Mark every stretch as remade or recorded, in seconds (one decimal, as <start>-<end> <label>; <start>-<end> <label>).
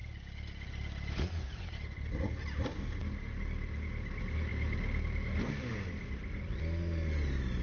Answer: 0.0-7.6 recorded